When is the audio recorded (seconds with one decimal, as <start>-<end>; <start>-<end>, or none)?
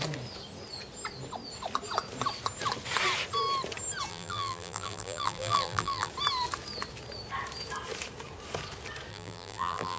0.0-4.1; 6.1-9.1